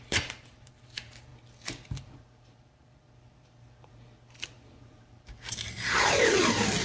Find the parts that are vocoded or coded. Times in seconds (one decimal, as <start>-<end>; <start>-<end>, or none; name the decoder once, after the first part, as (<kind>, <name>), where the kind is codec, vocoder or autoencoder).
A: 0.0-1.3 (vocoder, BigVGAN v2); 2.2-6.8